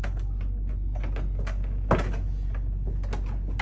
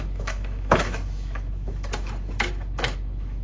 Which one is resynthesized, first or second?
second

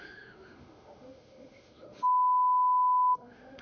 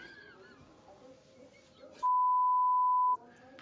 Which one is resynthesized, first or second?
first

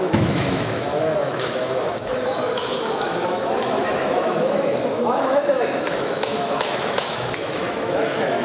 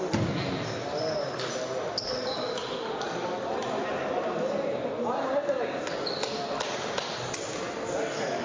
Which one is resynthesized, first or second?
first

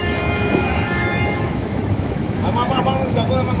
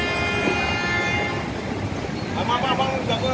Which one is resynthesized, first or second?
first